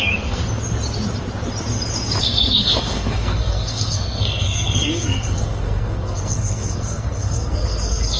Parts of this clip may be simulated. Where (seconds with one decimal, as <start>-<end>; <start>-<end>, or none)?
0.0-0.4; 2.2-8.2